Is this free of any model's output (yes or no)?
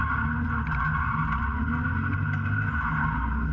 yes